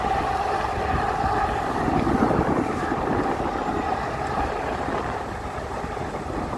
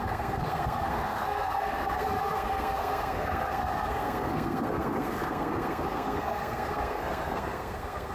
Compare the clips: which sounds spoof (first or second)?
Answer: second